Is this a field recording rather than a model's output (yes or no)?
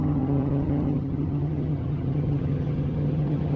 no